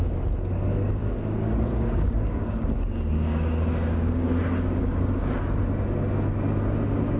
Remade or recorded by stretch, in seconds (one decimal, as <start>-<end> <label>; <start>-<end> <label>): 0.0-1.0 recorded; 1.0-5.3 remade; 5.3-7.2 recorded

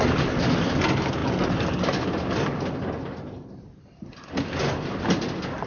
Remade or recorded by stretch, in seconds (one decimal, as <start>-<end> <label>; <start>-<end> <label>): 0.0-5.7 recorded

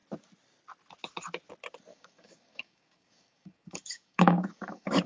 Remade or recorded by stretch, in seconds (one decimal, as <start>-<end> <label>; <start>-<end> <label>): 0.0-1.9 recorded; 1.9-5.1 remade

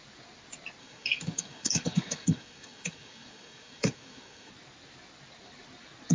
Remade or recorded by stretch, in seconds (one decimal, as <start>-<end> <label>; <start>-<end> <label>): 0.0-0.8 recorded; 0.8-4.5 remade; 4.5-6.1 recorded

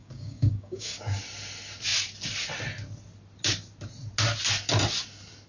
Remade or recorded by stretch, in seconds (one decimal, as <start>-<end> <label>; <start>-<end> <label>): 0.0-1.2 remade; 1.2-5.5 recorded

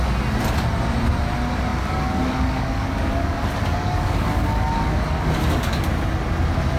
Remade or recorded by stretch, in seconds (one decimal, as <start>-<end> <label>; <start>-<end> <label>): 0.0-1.7 recorded; 1.7-5.8 remade; 5.8-6.8 recorded

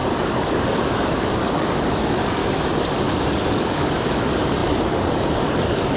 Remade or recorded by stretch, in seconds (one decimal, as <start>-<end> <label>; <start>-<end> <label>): 0.0-2.4 remade; 2.4-3.3 recorded; 3.3-6.0 remade

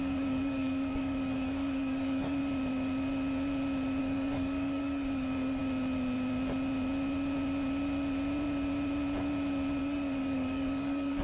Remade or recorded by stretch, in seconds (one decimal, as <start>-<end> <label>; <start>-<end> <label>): 0.0-2.4 remade; 2.4-4.0 recorded; 4.0-5.6 remade; 5.6-9.8 recorded; 9.8-11.2 remade